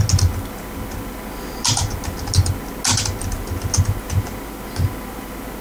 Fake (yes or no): no